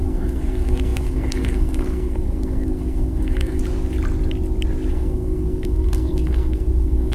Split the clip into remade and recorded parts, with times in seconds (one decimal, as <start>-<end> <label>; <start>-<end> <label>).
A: 0.0-3.6 remade; 3.6-4.9 recorded; 4.9-7.1 remade